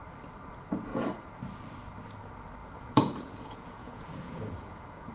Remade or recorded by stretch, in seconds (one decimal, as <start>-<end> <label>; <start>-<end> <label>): 0.0-0.9 recorded; 0.9-1.4 remade; 1.4-2.6 recorded; 2.6-5.1 remade